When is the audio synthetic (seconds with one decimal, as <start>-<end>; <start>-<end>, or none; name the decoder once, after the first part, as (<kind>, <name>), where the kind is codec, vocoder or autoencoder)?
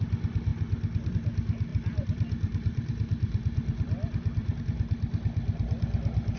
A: 1.7-4.6 (vocoder, BigVGAN v2)